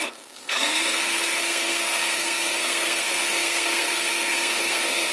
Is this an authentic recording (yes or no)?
no